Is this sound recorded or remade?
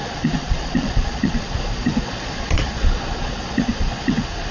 remade